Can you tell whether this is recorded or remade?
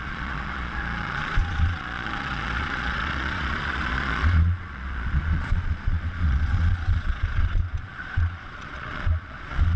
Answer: remade